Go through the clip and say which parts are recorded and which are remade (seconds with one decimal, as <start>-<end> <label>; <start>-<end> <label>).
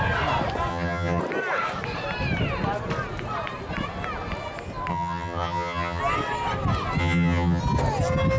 0.0-0.7 recorded; 0.7-1.2 remade; 1.2-4.9 recorded; 4.9-6.0 remade; 6.0-7.0 recorded; 7.0-7.6 remade; 7.6-8.4 recorded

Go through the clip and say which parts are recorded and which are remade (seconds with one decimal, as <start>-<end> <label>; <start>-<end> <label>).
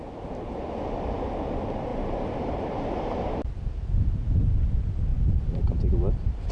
0.0-1.9 recorded; 1.9-3.3 remade; 3.3-6.5 recorded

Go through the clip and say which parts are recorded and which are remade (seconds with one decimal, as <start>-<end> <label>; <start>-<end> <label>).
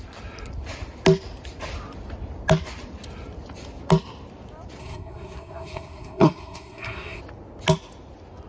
0.0-4.8 recorded; 4.8-7.2 remade; 7.2-8.5 recorded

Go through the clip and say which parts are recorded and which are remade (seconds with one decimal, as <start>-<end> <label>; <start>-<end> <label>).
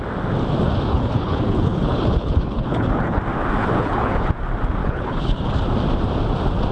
0.0-0.9 recorded; 0.9-3.2 remade; 3.2-3.6 recorded; 3.6-4.3 remade; 4.3-4.8 recorded; 4.8-5.5 remade; 5.5-6.7 recorded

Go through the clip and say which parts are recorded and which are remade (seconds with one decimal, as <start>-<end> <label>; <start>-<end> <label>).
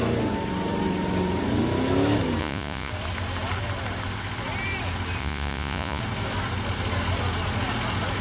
0.0-2.4 recorded; 2.4-2.9 remade; 2.9-5.2 recorded; 5.2-6.0 remade; 6.0-8.2 recorded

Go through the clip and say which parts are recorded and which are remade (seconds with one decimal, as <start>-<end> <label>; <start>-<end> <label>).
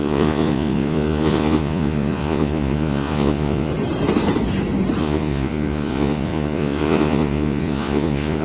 0.0-3.7 remade; 3.7-5.0 recorded; 5.0-8.4 remade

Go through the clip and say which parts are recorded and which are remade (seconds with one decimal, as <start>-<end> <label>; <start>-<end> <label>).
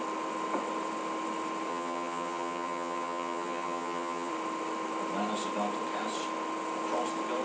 0.0-1.7 recorded; 1.7-4.3 remade; 4.3-7.4 recorded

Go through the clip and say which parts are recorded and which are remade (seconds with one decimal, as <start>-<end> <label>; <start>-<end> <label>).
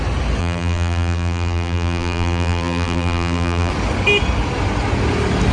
0.0-0.4 recorded; 0.4-3.7 remade; 3.7-5.5 recorded